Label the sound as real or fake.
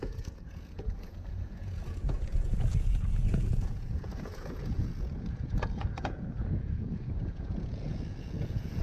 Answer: fake